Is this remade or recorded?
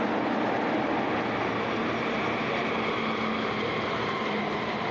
recorded